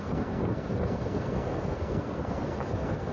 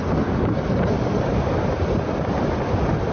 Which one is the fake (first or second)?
first